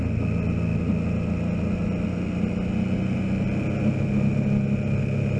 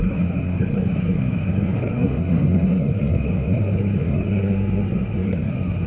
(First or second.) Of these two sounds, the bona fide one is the first